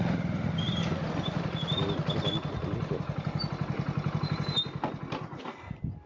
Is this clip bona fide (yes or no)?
yes